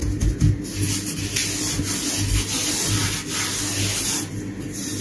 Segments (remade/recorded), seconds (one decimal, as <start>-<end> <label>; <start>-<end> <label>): 0.0-5.0 recorded